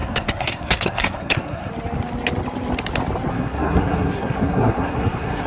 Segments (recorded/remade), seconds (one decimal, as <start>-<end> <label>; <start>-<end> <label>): 0.0-1.7 remade; 1.7-3.3 recorded; 3.3-5.5 remade